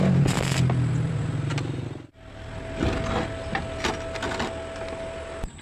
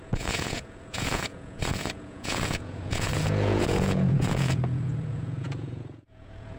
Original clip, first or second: first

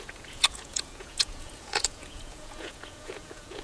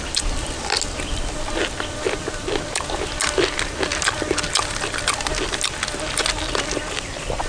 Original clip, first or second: second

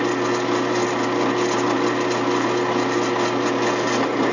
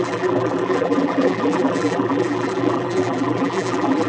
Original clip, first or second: first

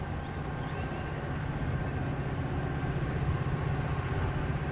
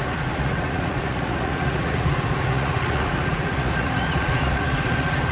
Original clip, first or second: first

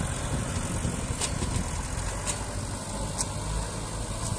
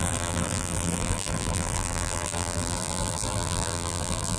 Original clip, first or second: first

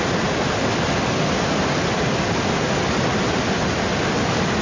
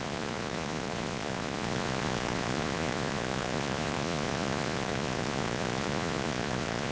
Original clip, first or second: first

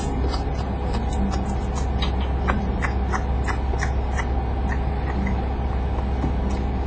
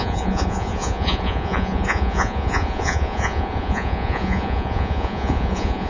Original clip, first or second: first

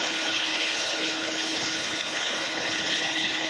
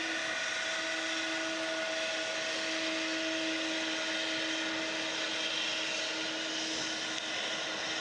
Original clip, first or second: second